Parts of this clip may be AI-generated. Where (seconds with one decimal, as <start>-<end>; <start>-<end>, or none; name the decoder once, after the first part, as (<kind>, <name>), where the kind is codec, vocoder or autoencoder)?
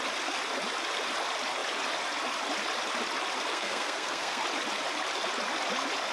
3.5-4.4 (codec, SNAC)